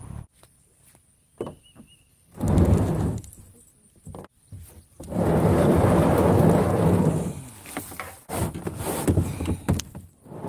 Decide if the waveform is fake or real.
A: real